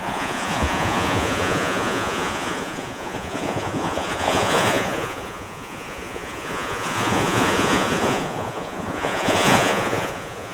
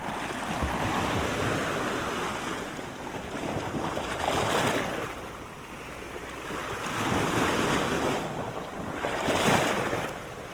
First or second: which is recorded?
second